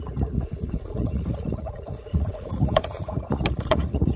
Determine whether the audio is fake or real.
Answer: fake